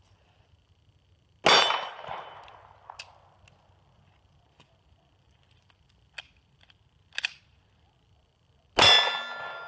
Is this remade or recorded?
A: recorded